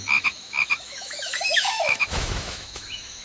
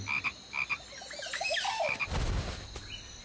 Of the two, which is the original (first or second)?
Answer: second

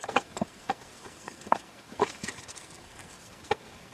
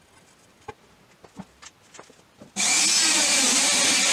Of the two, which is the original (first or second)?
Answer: second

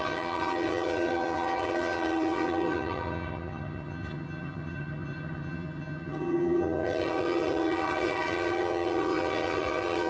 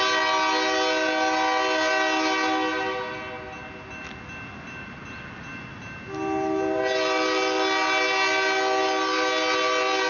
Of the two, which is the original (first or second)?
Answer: second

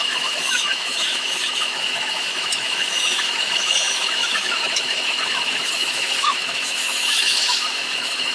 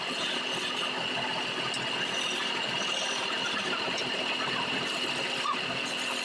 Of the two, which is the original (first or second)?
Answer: second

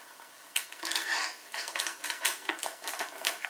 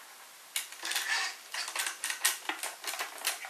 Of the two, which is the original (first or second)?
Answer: second